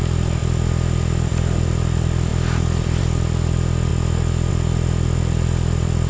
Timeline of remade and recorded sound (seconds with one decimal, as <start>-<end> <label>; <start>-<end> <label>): 0.0-0.4 remade; 0.4-1.3 recorded; 1.3-3.9 remade; 3.9-4.5 recorded; 4.5-6.1 remade